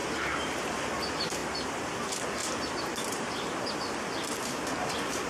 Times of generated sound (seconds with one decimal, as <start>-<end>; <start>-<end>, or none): 0.0-0.9; 1.4-1.9; 2.4-3.3